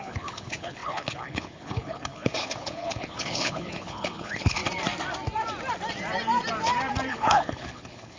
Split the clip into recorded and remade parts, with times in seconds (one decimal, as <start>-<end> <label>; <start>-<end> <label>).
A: 0.0-4.6 remade; 4.6-7.1 recorded; 7.1-8.2 remade